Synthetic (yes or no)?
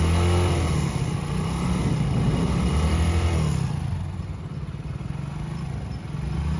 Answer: no